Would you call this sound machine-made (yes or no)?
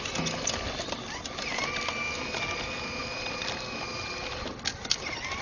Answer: no